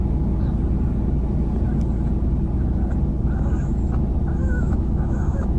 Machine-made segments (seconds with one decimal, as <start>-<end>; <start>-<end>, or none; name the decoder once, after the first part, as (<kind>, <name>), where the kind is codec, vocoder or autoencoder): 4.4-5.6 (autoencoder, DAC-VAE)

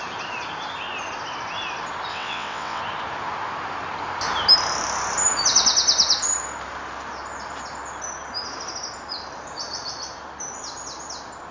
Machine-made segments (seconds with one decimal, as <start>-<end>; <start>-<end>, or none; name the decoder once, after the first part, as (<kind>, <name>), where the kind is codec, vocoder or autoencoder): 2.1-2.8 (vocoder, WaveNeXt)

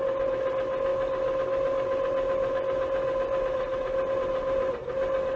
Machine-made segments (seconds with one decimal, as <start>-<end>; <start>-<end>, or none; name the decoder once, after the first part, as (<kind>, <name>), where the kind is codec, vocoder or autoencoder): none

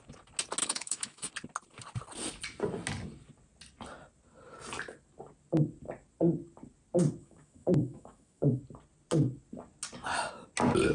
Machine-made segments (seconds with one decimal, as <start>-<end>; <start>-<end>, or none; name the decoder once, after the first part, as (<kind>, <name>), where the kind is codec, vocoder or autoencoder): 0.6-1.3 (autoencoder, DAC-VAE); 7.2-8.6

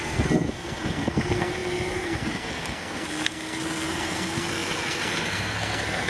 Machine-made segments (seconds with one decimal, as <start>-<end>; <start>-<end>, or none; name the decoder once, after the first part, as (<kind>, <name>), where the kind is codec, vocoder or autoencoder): 0.0-6.1 (codec, SNAC)

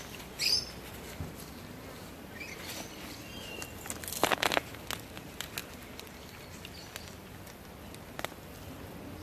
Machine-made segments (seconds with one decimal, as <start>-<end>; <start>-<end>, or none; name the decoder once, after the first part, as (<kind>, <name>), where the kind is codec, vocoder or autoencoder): none